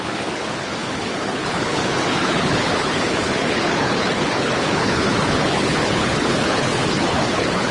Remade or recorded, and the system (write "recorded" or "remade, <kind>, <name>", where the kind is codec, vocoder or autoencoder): remade, codec, HILCodec